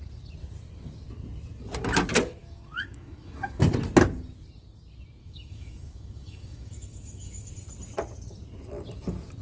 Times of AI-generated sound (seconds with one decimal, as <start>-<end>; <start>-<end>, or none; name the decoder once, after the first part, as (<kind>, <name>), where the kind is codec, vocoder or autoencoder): 2.4-3.6 (autoencoder, DAC-VAE); 5.2-7.5

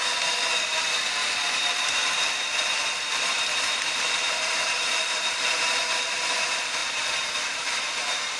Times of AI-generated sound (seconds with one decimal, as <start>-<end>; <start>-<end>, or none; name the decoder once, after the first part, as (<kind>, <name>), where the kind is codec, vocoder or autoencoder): 1.2-5.6 (vocoder, BigVGAN v2); 6.8-7.9